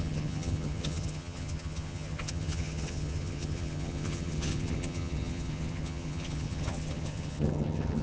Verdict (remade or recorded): remade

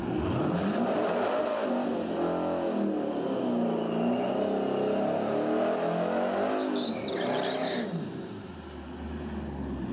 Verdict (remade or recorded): recorded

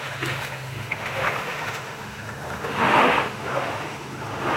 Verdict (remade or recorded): remade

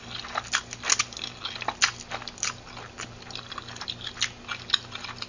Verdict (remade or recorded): recorded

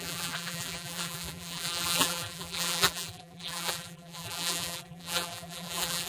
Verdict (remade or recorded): remade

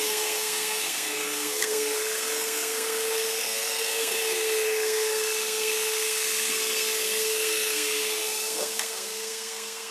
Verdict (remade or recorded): remade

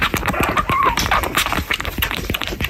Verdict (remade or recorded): remade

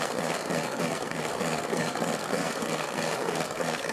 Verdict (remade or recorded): remade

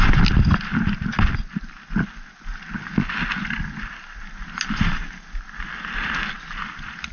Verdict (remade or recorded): recorded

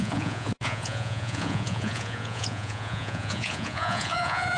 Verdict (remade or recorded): remade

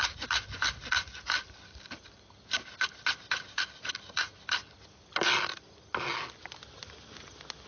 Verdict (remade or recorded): recorded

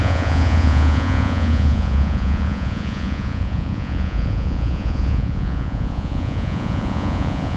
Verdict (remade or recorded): remade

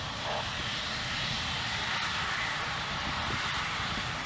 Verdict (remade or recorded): remade